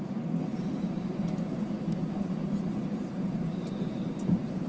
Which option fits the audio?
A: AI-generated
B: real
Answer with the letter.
A